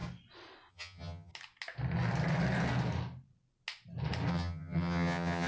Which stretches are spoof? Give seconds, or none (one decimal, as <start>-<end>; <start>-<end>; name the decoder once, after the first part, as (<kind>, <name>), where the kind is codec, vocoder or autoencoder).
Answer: 0.7-1.3 (vocoder, HiFi-GAN); 4.3-5.5